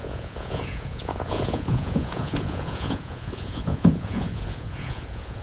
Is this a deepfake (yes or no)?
yes